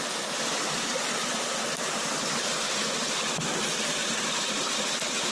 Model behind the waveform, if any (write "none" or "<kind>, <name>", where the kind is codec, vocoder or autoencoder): none